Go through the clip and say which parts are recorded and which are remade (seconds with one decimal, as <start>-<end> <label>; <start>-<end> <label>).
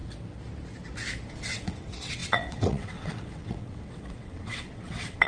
0.0-1.3 recorded; 1.3-5.3 remade